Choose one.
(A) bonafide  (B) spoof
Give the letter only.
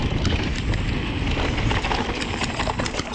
A